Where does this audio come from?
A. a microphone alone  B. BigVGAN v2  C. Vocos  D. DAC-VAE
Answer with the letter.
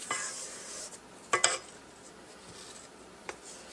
A